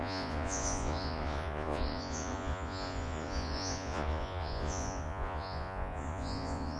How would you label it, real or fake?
fake